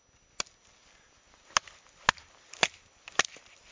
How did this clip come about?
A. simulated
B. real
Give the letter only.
B